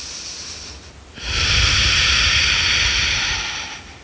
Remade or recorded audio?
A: recorded